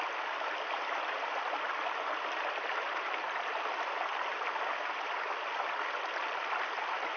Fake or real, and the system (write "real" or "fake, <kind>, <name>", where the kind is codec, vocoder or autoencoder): real